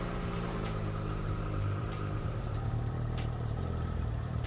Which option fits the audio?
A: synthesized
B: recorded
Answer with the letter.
A